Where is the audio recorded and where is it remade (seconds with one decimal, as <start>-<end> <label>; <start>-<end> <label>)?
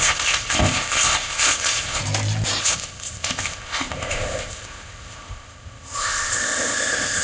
0.0-2.0 remade; 2.0-2.6 recorded; 2.6-7.2 remade